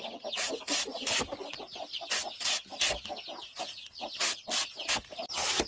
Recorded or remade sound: recorded